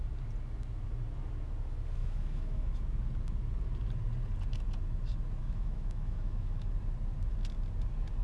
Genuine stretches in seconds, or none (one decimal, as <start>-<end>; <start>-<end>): 0.0-2.0; 2.7-5.4; 6.7-8.2